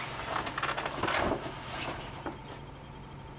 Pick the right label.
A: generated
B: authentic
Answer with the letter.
B